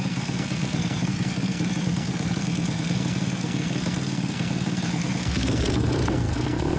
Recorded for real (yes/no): no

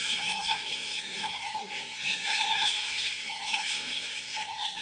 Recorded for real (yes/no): no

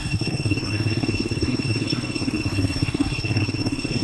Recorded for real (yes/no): no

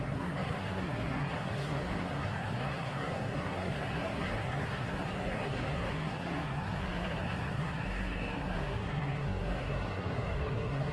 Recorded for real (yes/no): no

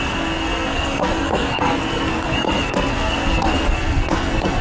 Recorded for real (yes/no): no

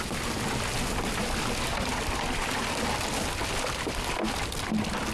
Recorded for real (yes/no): yes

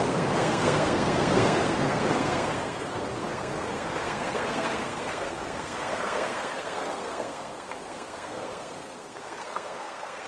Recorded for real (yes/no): no